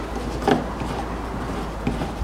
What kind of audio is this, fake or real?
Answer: real